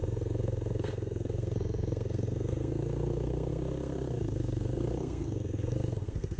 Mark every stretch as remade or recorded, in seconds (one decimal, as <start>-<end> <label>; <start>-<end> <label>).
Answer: 0.0-6.4 remade